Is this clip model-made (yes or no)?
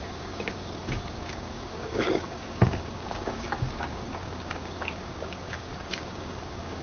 yes